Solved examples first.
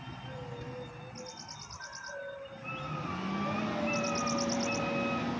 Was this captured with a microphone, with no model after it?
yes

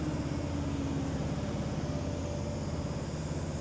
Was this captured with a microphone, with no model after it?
yes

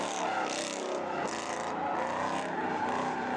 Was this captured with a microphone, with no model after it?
yes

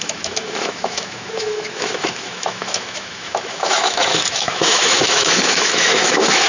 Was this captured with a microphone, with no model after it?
no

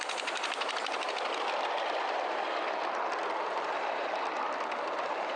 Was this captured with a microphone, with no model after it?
no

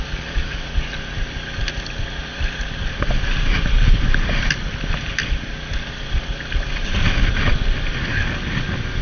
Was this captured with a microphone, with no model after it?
yes